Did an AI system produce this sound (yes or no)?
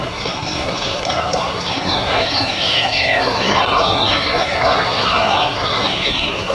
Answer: yes